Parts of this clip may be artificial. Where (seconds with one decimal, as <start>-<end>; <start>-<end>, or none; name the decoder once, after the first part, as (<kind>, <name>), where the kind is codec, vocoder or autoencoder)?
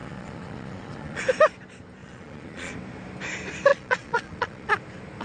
0.0-1.2 (vocoder, Vocos); 2.0-2.7; 3.7-4.7